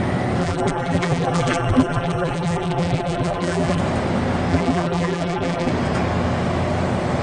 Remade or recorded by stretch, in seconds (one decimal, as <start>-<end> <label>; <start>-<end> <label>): 0.0-0.4 recorded; 0.4-3.8 remade; 3.8-4.5 recorded; 4.5-5.7 remade; 5.7-7.2 recorded